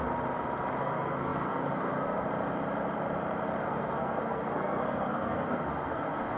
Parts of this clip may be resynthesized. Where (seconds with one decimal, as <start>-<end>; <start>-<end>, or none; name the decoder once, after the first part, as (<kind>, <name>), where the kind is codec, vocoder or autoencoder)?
0.8-2.3 (codec, SNAC); 3.6-6.4